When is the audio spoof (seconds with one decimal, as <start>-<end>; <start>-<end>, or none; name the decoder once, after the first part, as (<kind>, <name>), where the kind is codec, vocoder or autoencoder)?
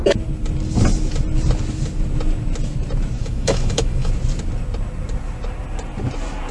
3.2-4.1 (autoencoder, DAC-VAE)